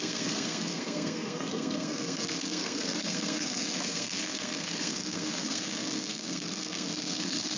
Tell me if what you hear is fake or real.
fake